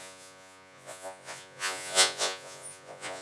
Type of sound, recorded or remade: remade